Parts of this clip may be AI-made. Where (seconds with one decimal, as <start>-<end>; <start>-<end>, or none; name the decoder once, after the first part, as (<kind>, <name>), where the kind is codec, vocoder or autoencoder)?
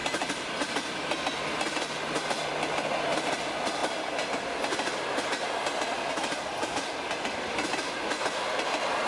none